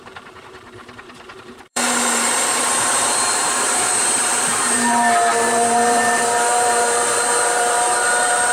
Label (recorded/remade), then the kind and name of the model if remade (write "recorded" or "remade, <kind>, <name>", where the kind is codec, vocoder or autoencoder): remade, vocoder, BigVGAN v2